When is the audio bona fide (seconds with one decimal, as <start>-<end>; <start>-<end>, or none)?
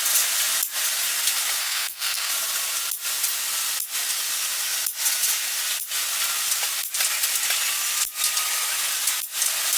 0.0-1.6; 2.3-9.8